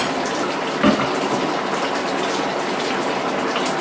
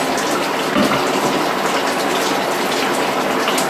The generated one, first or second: first